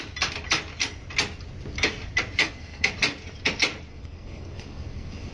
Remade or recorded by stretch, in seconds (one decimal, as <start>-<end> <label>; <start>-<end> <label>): 0.0-2.4 recorded; 2.4-2.9 remade; 2.9-3.9 recorded; 3.9-5.3 remade